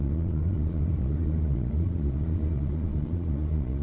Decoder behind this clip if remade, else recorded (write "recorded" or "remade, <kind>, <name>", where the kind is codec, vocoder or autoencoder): remade, vocoder, Vocos